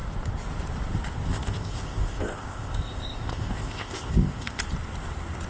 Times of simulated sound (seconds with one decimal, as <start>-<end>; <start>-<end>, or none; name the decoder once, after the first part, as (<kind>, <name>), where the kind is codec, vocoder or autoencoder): 1.3-4.6 (codec, ZipCodec)